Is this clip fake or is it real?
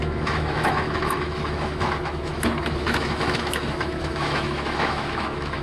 fake